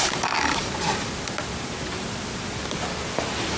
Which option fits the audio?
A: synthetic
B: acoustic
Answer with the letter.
B